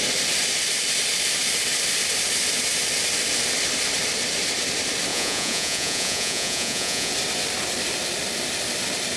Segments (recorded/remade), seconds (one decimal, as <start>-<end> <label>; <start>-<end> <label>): 0.0-5.1 recorded; 5.1-7.1 remade; 7.1-9.2 recorded